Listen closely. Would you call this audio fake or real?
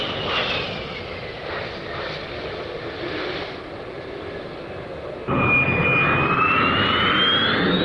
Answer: real